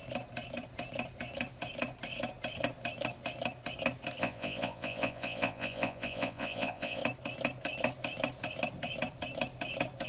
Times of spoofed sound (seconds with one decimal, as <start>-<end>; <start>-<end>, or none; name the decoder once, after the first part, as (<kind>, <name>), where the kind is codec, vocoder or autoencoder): 4.2-7.0 (vocoder, Vocos)